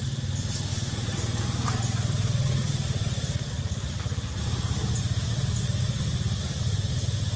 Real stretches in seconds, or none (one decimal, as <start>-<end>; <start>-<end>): 0.0-0.7; 4.0-7.4